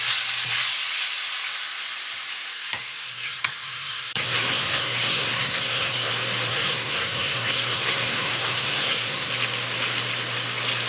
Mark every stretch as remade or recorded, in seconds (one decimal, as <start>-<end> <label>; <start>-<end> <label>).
0.0-2.5 recorded; 2.5-6.1 remade; 6.1-6.5 recorded; 6.5-9.3 remade; 9.3-10.9 recorded